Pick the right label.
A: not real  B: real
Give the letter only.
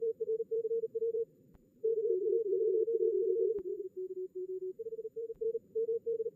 A